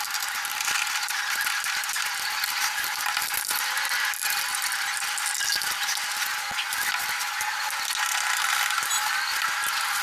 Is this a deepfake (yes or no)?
no